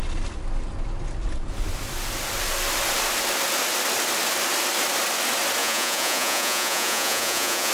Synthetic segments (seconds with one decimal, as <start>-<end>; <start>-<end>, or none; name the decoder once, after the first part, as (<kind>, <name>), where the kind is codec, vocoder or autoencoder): 5.6-7.7 (vocoder, Vocos)